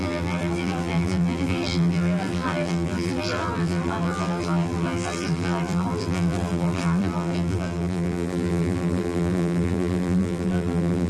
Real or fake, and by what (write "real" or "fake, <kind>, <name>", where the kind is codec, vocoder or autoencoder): fake, vocoder, BigVGAN v2